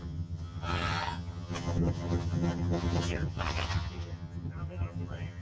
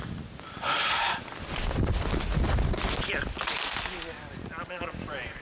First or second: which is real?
second